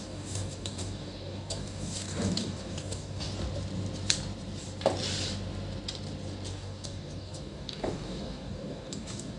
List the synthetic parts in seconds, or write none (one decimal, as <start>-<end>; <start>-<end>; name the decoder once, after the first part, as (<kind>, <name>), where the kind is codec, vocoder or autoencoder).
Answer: 0.0-3.3 (codec, DAC); 6.5-9.4